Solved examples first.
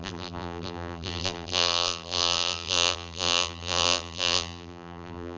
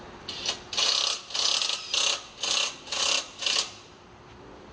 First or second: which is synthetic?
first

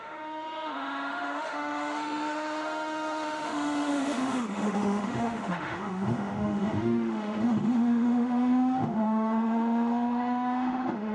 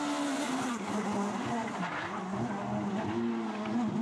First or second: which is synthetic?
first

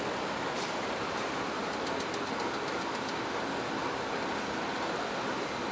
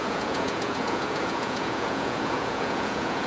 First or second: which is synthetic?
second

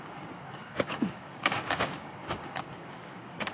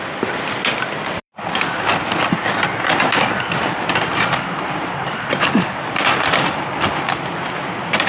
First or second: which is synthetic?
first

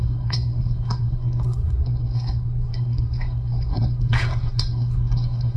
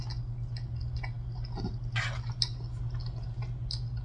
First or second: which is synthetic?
first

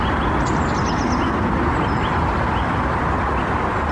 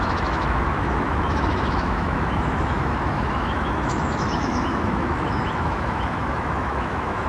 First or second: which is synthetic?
second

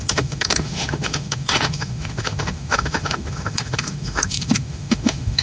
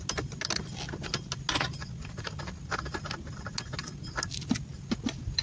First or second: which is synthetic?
first